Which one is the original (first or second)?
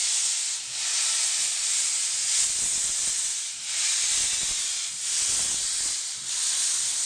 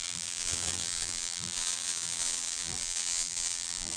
first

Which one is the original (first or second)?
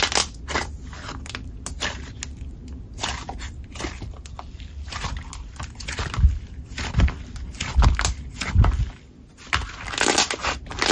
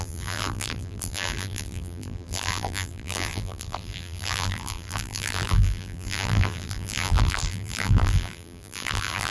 first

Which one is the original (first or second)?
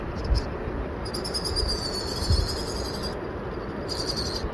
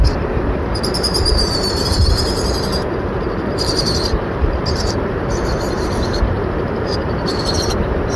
first